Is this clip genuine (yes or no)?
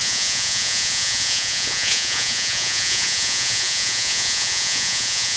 no